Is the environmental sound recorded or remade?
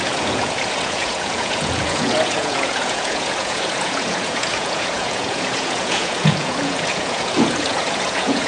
remade